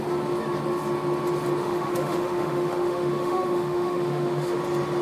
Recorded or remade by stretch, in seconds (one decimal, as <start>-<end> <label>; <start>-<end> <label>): 0.0-1.6 recorded; 1.6-4.6 remade; 4.6-5.0 recorded